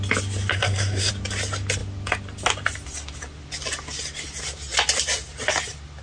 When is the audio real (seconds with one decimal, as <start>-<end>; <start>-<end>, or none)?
0.0-0.5; 1.1-6.0